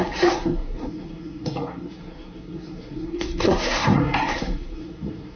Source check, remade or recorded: remade